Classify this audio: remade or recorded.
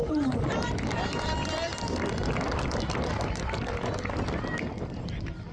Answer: recorded